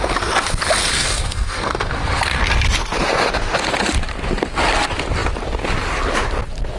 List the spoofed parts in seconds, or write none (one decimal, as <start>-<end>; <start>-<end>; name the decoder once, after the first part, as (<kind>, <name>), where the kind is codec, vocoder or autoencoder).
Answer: 0.9-2.4 (codec, SNAC)